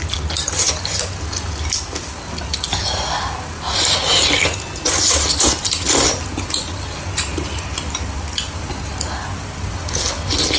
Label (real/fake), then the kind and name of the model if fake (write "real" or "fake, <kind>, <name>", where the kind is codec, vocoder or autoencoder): real